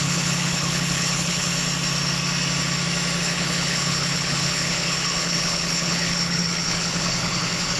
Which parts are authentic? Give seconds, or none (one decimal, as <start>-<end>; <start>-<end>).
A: 1.5-3.2